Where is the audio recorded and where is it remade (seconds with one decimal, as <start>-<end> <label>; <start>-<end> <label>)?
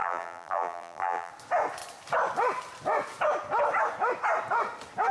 0.0-1.3 remade; 1.3-5.1 recorded